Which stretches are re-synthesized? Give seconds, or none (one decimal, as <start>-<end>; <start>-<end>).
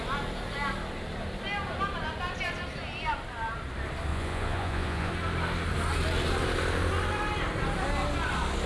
4.1-5.1